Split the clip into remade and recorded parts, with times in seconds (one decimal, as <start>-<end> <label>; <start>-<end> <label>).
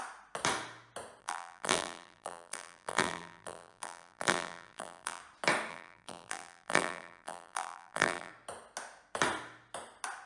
0.0-1.2 recorded; 1.2-5.2 remade; 5.2-5.7 recorded; 5.7-8.3 remade; 8.3-10.3 recorded